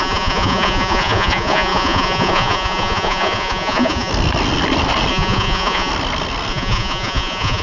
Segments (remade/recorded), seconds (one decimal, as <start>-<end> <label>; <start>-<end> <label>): 0.0-4.1 remade; 4.1-5.1 recorded; 5.1-5.9 remade; 5.9-6.5 recorded; 6.5-7.6 remade